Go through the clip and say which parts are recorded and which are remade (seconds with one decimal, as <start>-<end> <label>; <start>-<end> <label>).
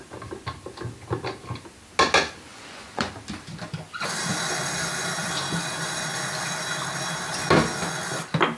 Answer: 0.0-2.5 recorded; 2.5-3.1 remade; 3.1-8.6 recorded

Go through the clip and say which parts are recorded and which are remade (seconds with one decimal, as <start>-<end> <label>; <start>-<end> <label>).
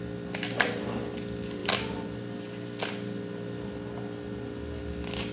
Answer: 0.0-1.6 recorded; 1.6-4.8 remade; 4.8-5.3 recorded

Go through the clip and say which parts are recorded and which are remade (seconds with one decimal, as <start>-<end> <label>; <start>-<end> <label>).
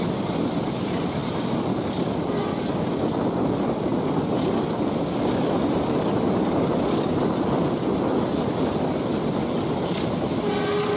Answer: 0.0-11.0 recorded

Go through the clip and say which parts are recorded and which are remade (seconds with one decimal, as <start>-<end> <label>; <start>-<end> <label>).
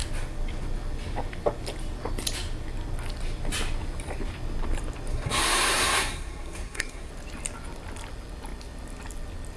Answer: 0.0-5.1 recorded; 5.1-7.1 remade; 7.1-9.6 recorded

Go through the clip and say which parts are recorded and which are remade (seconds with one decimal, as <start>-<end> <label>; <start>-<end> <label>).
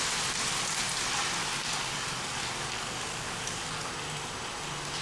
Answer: 0.0-1.4 recorded; 1.4-3.9 remade; 3.9-5.0 recorded